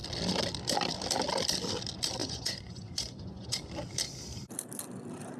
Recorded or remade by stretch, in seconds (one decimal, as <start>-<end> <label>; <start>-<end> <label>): 0.0-2.2 recorded; 2.2-3.7 remade; 3.7-5.4 recorded